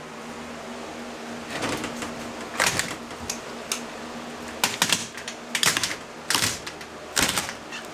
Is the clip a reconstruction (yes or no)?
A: no